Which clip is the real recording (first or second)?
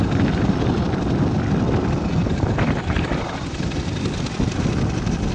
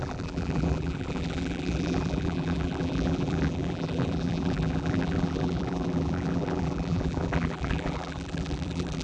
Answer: first